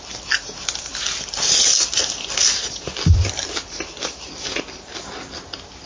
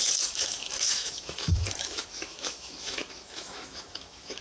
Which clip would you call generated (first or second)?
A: second